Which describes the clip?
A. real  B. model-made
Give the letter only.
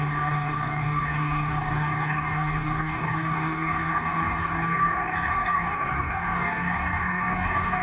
B